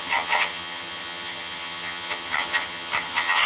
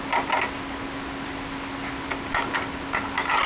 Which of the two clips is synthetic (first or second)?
first